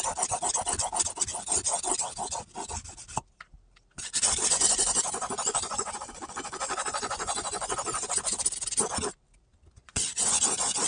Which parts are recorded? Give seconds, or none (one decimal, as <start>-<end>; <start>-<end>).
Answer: 0.0-4.5; 8.4-9.8; 10.4-10.9